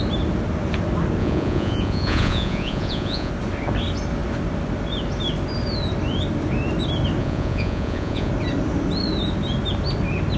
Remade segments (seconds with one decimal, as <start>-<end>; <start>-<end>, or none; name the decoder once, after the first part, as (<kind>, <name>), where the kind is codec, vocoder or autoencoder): 1.2-3.3 (vocoder, Vocos); 7.2-8.3

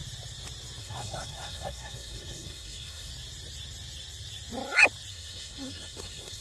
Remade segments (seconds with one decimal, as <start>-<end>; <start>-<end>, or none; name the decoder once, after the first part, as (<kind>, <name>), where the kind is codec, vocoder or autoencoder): 0.8-3.1 (codec, SNAC); 5.1-6.4

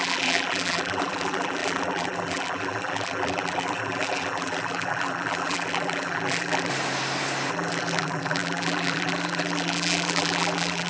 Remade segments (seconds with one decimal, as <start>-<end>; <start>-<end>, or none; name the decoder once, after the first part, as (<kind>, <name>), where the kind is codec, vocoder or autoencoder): 0.0-6.7 (vocoder, BigVGAN v2); 7.5-10.9

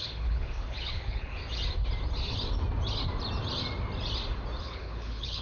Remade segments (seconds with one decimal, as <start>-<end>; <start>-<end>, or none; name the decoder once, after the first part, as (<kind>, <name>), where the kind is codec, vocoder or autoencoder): 0.0-1.4 (codec, HILCodec); 4.6-5.4